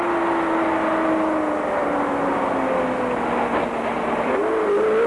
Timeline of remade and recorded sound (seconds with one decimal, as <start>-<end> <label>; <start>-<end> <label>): 0.0-5.1 recorded